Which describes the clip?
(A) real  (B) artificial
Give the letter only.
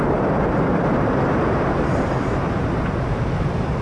B